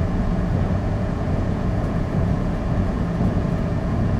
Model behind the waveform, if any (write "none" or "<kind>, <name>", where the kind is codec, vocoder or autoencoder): vocoder, Vocos